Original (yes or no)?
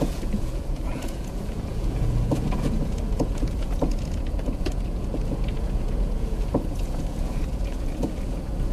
no